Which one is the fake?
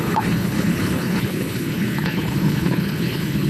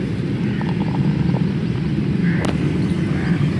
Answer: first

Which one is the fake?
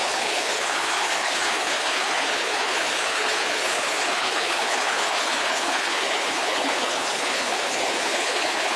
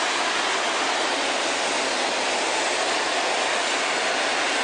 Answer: first